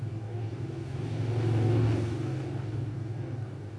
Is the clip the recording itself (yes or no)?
no